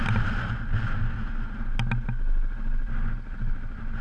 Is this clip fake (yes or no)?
no